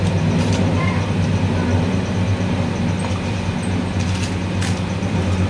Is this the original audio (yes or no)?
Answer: yes